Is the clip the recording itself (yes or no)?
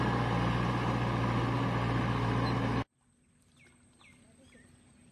yes